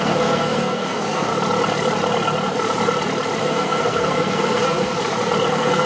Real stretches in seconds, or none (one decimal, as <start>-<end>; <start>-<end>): 1.3-3.4; 4.9-5.5